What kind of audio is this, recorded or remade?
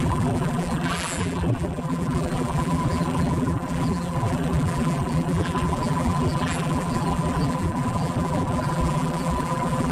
remade